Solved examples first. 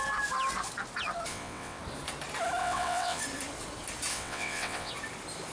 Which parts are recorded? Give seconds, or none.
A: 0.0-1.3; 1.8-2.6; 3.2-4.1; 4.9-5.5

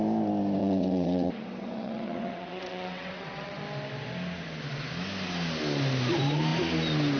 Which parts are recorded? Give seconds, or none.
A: 0.0-0.6; 3.6-7.2

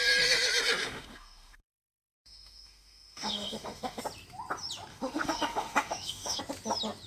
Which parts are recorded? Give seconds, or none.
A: 0.0-0.8; 4.0-4.9; 6.4-7.1

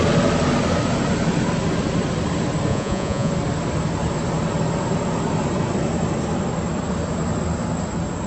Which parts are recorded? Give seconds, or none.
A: 0.0-2.7; 3.3-8.3

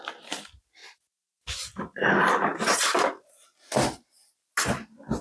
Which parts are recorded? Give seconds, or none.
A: 0.0-5.2

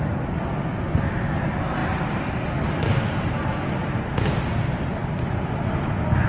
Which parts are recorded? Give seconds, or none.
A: 0.0-6.3